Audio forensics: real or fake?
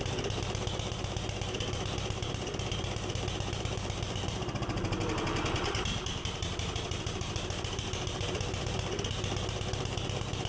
fake